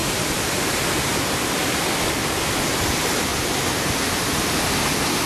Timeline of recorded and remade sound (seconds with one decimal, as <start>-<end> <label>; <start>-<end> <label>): 0.0-2.6 recorded; 2.6-3.3 remade; 3.3-4.1 recorded; 4.1-5.3 remade